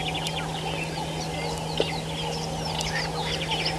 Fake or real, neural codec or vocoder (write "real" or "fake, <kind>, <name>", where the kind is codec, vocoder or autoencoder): real